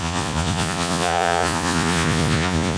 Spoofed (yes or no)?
yes